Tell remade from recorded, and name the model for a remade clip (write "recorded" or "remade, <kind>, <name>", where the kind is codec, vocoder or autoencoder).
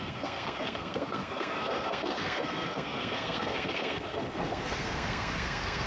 remade, codec, SNAC